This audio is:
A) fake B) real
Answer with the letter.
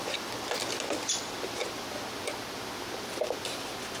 B